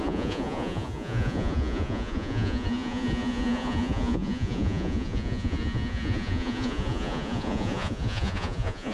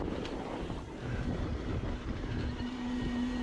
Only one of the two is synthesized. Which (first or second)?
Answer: first